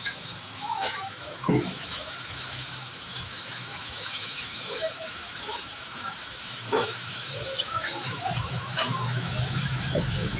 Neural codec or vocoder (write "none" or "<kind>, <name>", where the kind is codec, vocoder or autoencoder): autoencoder, DAC-VAE